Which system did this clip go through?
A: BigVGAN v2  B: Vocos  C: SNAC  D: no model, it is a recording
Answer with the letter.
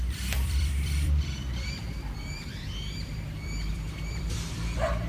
A